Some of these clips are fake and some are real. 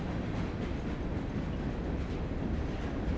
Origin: real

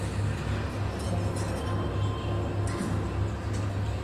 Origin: real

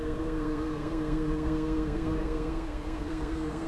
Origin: fake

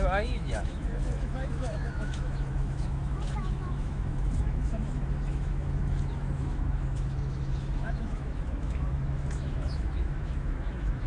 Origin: fake